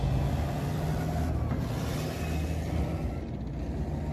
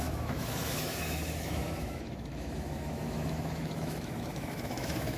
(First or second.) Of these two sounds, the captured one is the first